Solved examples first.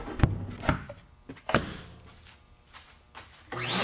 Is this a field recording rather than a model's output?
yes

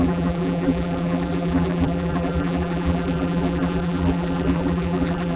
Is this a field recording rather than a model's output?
no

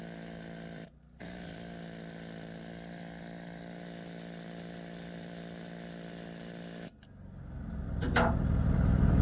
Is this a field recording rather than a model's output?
yes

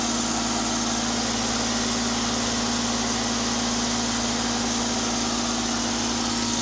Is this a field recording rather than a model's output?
yes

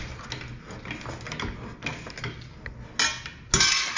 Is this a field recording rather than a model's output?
yes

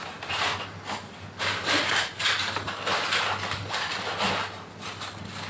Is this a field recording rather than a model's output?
yes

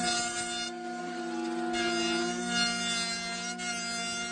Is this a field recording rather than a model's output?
yes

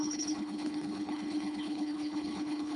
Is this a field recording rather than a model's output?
no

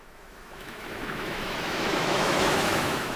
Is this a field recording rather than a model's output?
no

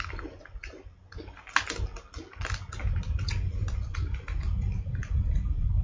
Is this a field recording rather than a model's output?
yes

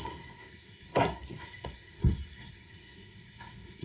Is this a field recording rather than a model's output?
no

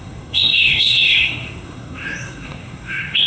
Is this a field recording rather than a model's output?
no